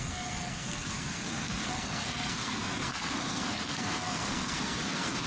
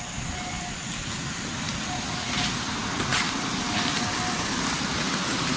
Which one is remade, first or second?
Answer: first